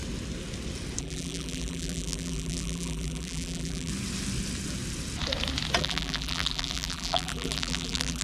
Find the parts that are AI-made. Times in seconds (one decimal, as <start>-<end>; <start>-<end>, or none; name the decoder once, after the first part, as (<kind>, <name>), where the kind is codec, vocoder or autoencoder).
1.0-3.9 (vocoder, BigVGAN v2); 5.8-8.2